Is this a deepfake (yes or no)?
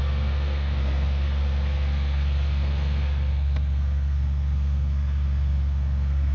yes